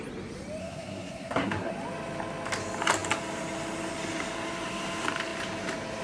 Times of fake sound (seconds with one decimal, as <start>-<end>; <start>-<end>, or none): 0.6-1.7